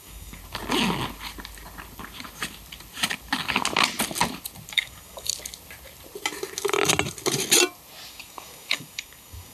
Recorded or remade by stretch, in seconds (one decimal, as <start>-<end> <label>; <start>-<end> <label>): 0.0-0.4 remade; 0.4-4.7 recorded; 4.7-5.3 remade; 5.3-8.1 recorded; 8.1-9.5 remade